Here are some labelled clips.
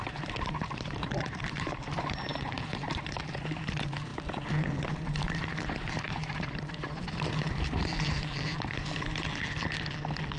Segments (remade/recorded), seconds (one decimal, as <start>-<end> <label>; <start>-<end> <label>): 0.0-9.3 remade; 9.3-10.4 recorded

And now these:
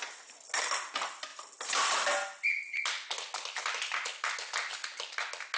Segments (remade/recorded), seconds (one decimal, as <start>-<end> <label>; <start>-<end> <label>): 0.0-5.6 recorded

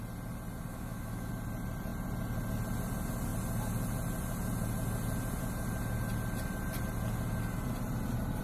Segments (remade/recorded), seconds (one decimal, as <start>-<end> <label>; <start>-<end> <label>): 0.0-0.7 recorded; 0.7-1.3 remade; 1.3-8.4 recorded

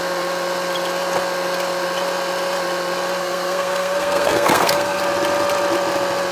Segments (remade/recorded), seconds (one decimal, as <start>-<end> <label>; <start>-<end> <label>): 0.0-3.2 recorded; 3.2-5.0 remade; 5.0-6.3 recorded

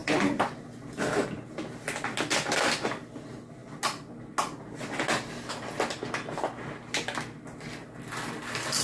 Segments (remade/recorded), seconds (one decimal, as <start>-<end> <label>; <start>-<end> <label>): 0.0-8.8 recorded

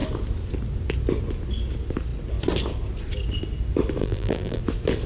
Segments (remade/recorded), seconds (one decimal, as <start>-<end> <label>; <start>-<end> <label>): 0.0-4.0 recorded; 4.0-4.6 remade; 4.6-5.1 recorded